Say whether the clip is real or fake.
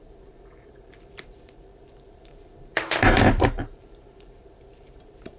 fake